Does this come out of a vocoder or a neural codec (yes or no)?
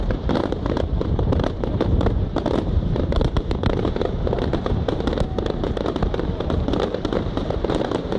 yes